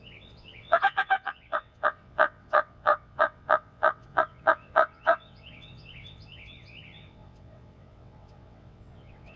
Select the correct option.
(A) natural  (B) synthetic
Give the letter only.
B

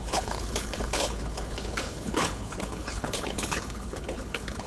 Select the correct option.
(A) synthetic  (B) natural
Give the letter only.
A